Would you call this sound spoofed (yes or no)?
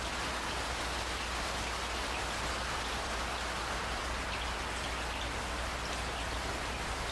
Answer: no